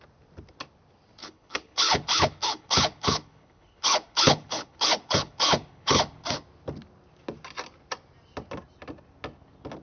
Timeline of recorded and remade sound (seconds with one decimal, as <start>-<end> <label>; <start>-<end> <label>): 0.0-1.2 recorded; 1.2-6.0 remade; 6.0-9.8 recorded